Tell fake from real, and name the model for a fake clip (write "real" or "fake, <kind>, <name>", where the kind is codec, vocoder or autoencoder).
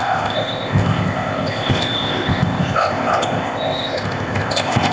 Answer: fake, codec, ZipCodec